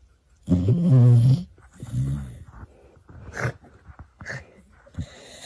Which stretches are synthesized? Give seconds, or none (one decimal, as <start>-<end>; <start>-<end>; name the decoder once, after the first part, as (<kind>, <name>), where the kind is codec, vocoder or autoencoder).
4.1-4.6 (codec, HILCodec)